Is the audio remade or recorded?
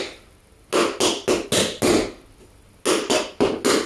recorded